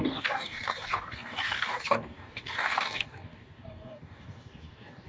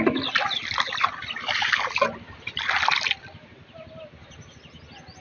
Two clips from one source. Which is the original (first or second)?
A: second